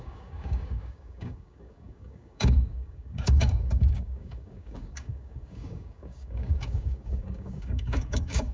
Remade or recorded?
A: remade